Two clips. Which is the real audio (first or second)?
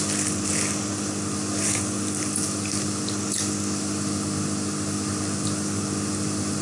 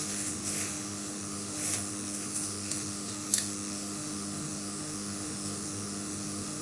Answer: first